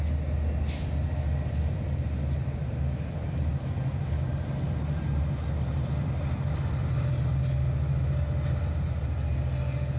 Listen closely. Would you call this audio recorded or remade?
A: recorded